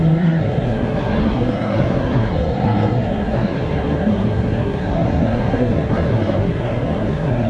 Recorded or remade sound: remade